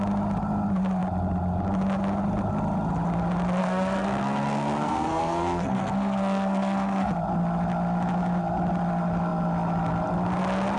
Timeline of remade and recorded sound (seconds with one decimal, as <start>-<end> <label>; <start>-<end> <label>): 0.0-3.6 recorded; 3.6-7.1 remade; 7.1-10.8 recorded